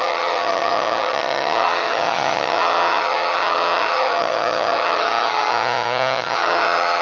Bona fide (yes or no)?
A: no